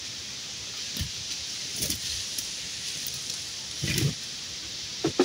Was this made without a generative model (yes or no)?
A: yes